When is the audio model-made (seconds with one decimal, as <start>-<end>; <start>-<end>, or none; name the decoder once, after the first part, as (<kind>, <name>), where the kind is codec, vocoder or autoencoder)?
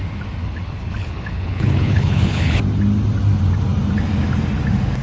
0.4-2.6 (codec, HILCodec)